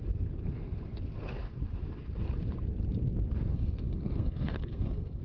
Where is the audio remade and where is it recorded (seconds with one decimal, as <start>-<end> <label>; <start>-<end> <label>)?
0.0-3.5 recorded; 3.5-5.2 remade